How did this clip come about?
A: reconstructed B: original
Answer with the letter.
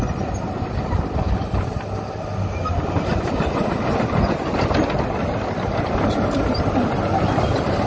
B